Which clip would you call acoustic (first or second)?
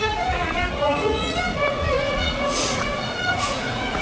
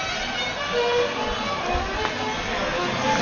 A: second